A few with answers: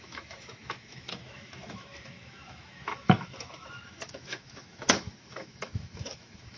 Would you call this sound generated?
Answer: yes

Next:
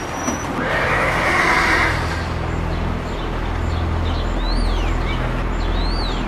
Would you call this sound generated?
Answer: no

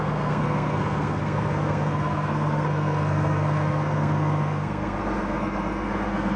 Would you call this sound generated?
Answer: yes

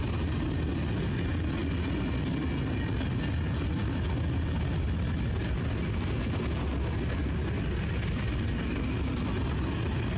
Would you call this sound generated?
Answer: no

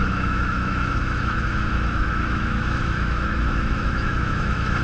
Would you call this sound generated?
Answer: yes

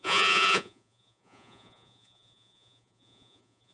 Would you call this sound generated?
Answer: yes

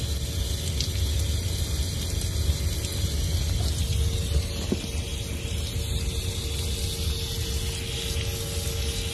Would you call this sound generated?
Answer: no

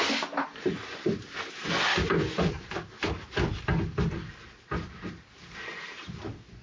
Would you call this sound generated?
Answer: no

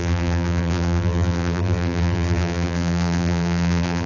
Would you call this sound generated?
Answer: yes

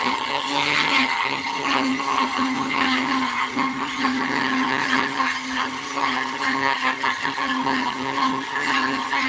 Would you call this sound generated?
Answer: yes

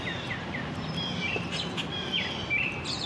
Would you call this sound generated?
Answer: no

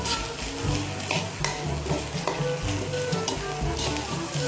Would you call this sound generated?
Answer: no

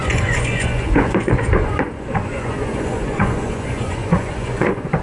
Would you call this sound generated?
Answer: yes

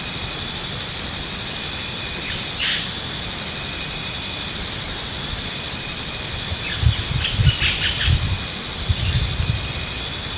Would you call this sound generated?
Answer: no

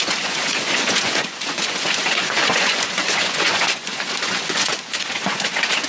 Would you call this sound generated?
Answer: yes